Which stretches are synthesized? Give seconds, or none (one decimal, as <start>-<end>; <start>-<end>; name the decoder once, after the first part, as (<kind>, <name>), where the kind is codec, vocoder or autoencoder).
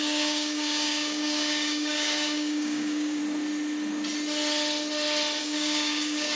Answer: 0.0-3.2 (codec, DAC); 5.4-6.4